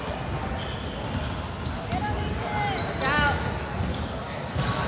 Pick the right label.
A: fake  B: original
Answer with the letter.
B